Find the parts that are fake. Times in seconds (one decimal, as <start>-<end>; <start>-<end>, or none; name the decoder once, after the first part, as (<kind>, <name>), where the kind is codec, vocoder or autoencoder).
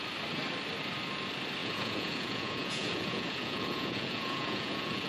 1.6-5.1 (vocoder, Vocos)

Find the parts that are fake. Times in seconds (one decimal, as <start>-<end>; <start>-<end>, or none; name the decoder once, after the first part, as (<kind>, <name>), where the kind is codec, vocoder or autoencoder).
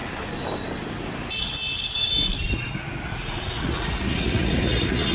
3.1-5.1 (vocoder, Vocos)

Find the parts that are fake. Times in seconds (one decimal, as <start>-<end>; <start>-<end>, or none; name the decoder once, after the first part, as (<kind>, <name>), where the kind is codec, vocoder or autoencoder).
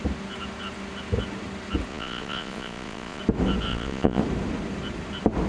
1.9-3.2 (vocoder, Vocos); 3.7-4.2